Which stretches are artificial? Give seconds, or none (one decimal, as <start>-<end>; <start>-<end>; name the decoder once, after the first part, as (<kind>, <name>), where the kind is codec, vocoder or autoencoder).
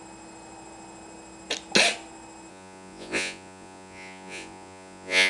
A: 2.5-5.3 (vocoder, Vocos)